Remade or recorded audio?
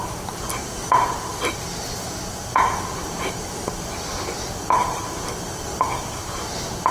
recorded